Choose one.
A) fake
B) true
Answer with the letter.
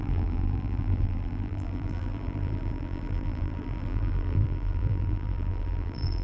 A